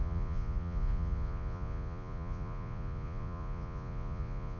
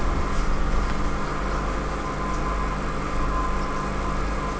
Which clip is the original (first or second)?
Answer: second